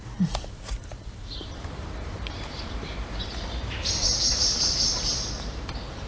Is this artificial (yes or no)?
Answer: yes